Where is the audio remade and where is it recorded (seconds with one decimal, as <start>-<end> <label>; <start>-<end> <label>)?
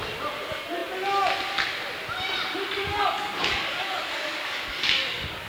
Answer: 0.0-2.9 recorded; 2.9-5.5 remade